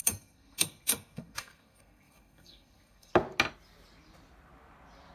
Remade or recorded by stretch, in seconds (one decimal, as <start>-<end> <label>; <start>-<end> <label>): 0.0-3.1 remade; 3.1-5.1 recorded